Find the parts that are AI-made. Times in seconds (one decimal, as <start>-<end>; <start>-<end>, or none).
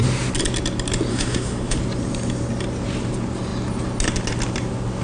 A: 1.1-1.8